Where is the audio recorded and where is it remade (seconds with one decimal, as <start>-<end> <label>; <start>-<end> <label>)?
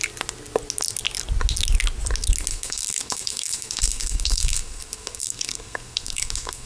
0.0-2.5 recorded; 2.5-6.7 remade